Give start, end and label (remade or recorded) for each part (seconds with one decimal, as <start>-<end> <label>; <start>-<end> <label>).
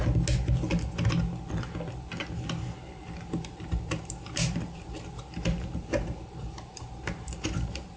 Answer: 0.0-3.0 recorded; 3.0-8.0 remade